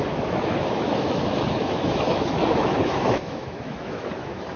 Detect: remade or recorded remade